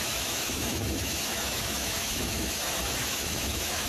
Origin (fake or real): fake